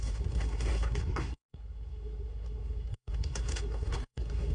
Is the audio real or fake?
fake